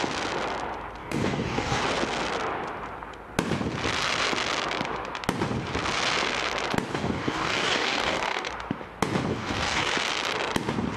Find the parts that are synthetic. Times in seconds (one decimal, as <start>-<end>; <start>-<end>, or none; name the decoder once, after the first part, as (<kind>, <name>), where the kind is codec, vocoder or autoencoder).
1.0-1.8 (codec, DAC); 6.9-8.5; 9.3-9.9